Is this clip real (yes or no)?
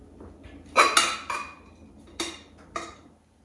yes